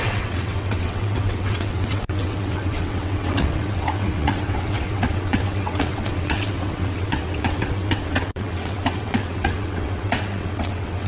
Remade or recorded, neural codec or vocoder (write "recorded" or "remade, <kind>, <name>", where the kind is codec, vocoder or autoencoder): remade, vocoder, WaveNeXt